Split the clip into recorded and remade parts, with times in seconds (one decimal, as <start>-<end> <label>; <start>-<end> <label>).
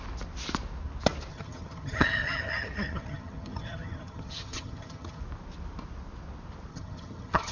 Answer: 0.0-1.3 recorded; 1.3-5.2 remade; 5.2-6.7 recorded; 6.7-7.5 remade